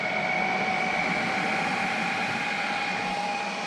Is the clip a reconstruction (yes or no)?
yes